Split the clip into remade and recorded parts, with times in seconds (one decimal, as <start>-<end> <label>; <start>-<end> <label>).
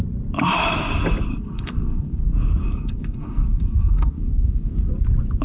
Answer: 0.0-1.3 recorded; 1.3-2.2 remade; 2.2-2.6 recorded; 2.6-4.9 remade; 4.9-5.4 recorded